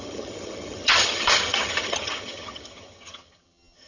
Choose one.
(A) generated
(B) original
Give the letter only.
A